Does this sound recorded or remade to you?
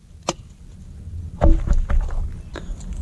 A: recorded